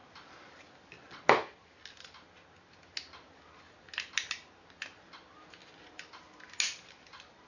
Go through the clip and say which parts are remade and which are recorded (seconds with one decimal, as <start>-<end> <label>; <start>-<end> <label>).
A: 0.0-7.5 recorded